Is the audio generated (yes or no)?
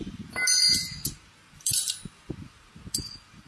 yes